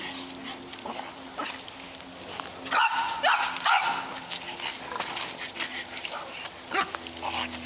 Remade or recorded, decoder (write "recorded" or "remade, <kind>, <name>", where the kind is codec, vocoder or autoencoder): recorded